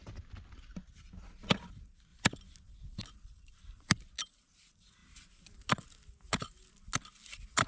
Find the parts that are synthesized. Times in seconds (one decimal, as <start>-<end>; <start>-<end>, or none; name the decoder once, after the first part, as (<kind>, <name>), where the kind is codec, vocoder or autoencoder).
none